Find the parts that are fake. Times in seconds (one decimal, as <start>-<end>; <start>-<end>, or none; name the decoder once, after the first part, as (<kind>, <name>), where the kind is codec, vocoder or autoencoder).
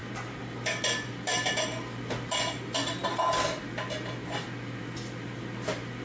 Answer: none